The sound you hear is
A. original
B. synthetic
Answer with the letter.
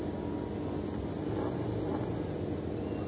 A